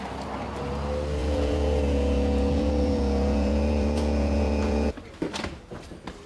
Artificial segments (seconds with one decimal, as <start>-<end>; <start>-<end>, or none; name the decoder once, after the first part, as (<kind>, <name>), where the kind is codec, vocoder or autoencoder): 1.2-4.9 (vocoder, Vocos)